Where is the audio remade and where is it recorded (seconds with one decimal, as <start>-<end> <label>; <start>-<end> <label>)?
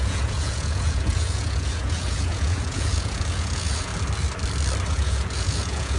0.0-3.9 remade; 3.9-4.9 recorded; 4.9-6.0 remade